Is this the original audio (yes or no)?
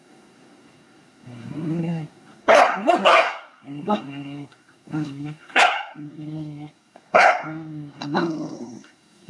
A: no